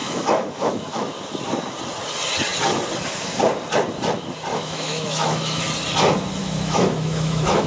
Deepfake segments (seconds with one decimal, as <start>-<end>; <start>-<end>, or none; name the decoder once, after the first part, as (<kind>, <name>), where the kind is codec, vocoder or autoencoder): 0.0-1.1 (autoencoder, DAC-VAE); 4.5-5.6; 6.4-7.7